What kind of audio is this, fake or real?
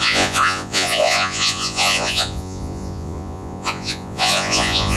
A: fake